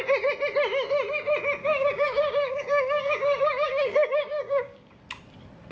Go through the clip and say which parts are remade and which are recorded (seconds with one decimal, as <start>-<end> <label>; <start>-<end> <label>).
0.0-1.6 recorded; 1.6-5.0 remade; 5.0-5.7 recorded